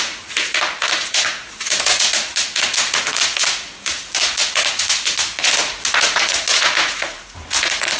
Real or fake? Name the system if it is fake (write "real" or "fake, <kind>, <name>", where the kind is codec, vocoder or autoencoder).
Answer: fake, vocoder, Vocos